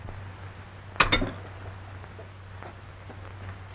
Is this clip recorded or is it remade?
recorded